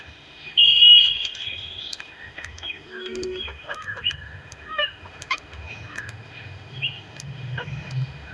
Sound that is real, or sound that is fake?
fake